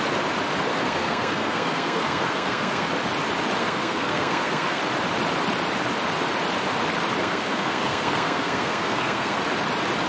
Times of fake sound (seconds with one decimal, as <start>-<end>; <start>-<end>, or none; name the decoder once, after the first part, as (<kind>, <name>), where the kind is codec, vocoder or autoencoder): 0.7-2.9 (codec, SNAC); 3.6-4.8; 7.2-9.4